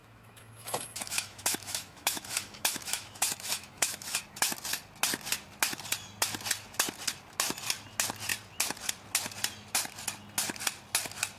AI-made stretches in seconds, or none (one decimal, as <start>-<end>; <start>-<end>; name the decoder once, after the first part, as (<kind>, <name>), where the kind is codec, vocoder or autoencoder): 0.0-4.2 (autoencoder, DAC-VAE)